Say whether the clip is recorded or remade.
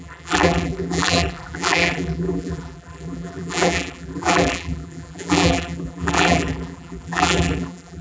remade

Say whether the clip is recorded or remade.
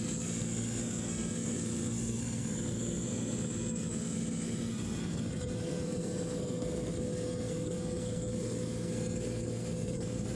remade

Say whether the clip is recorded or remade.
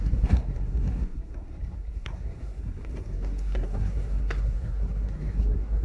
remade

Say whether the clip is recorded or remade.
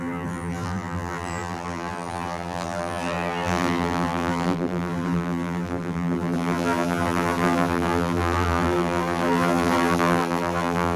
remade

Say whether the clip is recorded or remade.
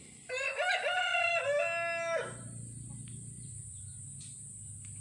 recorded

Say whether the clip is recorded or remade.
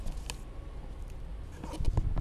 recorded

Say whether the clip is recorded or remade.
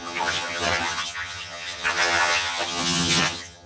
remade